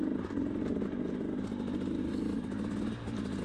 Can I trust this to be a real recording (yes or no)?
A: yes